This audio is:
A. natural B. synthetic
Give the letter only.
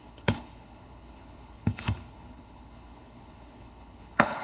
B